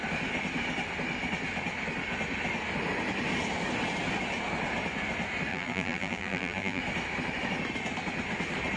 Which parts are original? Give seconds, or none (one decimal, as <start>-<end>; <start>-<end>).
0.0-5.5; 6.8-8.8